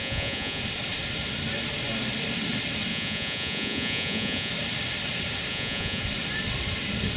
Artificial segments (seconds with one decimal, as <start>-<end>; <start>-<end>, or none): 0.0-0.6; 2.9-4.5; 5.5-6.0